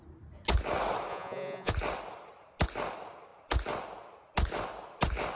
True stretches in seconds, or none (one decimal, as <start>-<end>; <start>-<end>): 0.0-1.1; 1.7-5.4